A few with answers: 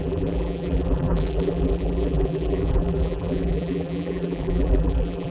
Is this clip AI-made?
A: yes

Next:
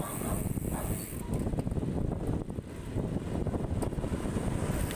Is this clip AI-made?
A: no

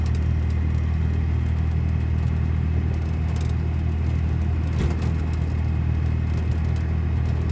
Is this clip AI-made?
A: no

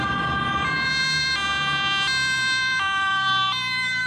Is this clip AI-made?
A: no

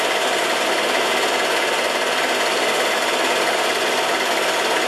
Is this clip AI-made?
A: no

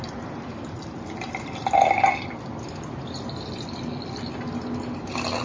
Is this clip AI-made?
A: no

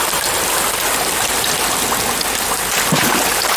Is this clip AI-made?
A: no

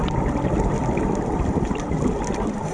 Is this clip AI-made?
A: yes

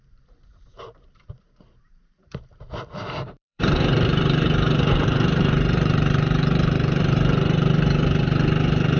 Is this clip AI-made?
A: yes